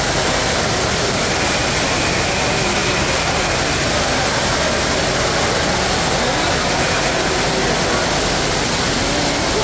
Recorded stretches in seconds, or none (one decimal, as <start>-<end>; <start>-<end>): 0.0-9.6